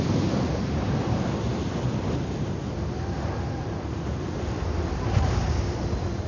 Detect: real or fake real